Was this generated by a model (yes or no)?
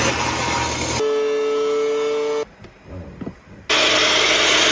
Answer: no